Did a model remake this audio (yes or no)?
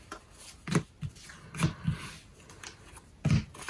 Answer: no